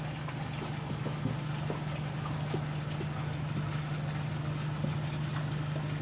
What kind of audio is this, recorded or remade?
recorded